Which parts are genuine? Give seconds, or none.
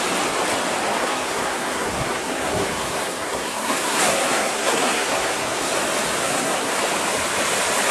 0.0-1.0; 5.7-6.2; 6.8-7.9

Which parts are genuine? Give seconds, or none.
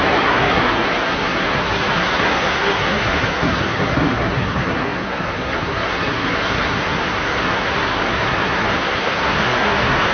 none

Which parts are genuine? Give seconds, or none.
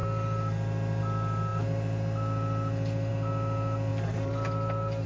1.0-3.9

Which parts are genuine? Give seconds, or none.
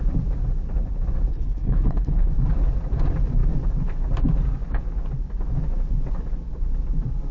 0.0-1.3; 2.3-7.3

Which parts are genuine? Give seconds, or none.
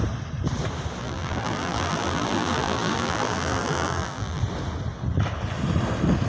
0.0-1.0; 4.4-6.3